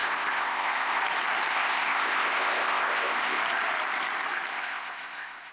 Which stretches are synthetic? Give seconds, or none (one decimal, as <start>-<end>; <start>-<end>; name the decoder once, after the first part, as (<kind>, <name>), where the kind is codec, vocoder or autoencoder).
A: 0.0-1.0 (codec, ZipCodec); 1.5-3.4; 4.5-5.5